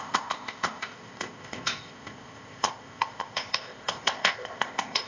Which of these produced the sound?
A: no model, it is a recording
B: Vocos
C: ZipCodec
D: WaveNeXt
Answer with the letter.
C